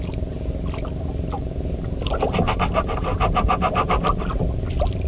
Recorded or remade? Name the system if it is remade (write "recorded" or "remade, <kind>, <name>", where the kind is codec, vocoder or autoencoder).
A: recorded